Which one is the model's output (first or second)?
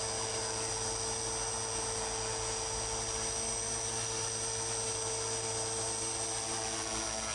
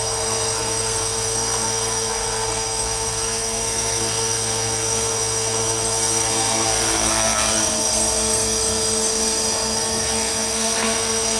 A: second